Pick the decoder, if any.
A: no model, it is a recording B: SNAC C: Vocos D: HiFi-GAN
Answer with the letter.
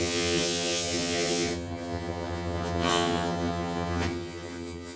D